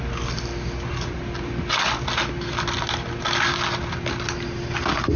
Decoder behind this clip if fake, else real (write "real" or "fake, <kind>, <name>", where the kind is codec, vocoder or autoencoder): real